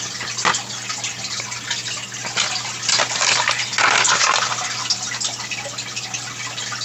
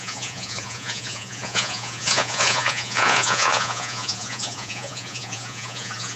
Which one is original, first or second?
first